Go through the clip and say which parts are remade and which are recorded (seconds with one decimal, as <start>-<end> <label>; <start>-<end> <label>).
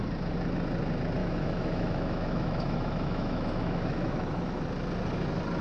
0.0-1.2 recorded; 1.2-4.6 remade; 4.6-5.6 recorded